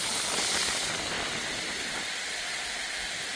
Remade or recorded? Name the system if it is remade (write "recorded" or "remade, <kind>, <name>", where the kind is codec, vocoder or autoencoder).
recorded